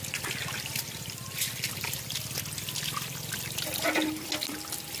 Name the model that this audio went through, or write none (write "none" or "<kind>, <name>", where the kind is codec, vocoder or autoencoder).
none